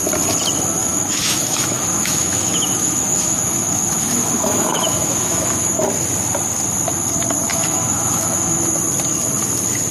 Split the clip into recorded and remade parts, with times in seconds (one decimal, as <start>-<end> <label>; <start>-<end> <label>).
0.0-0.8 recorded; 0.8-5.8 remade; 5.8-7.5 recorded; 7.5-8.6 remade; 8.6-9.9 recorded